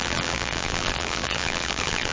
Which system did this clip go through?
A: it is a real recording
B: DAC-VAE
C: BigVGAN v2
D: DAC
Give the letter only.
C